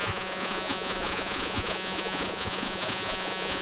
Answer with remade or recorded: remade